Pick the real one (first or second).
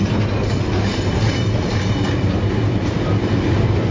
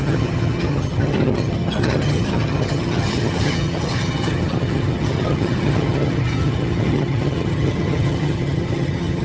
first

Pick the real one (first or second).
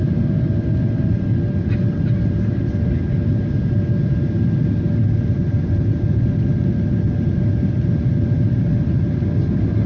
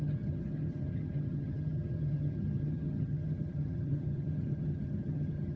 first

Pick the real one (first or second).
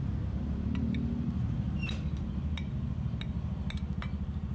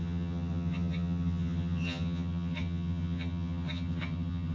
first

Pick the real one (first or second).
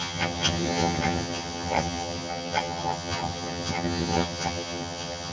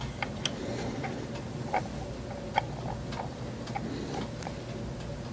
second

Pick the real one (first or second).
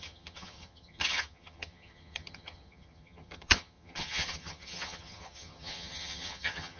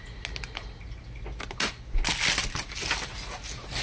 second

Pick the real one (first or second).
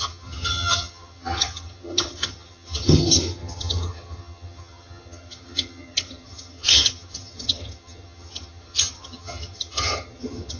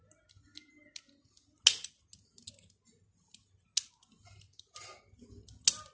second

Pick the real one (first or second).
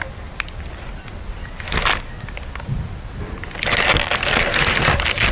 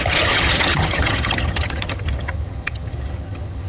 first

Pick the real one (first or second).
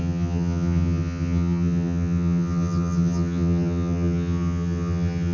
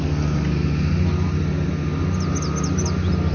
second